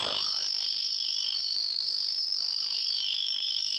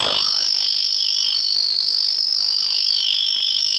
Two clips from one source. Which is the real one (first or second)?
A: second